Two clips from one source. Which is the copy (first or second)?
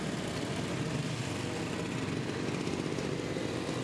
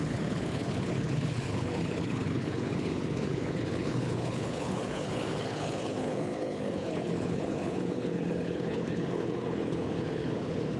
second